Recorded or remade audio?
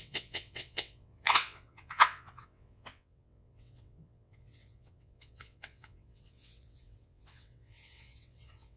remade